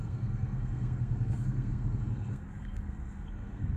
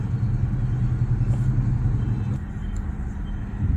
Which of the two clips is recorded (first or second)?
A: second